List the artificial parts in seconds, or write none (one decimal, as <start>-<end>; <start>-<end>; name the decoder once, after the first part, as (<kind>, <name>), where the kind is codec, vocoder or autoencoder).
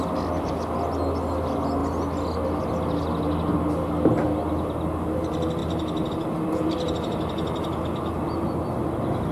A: none